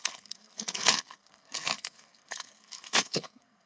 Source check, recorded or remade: remade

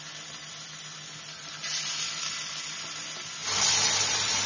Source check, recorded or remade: recorded